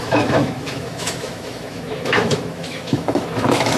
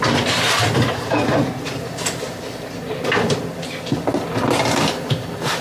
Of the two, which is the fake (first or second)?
first